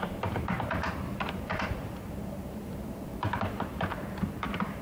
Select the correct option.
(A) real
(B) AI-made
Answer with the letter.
B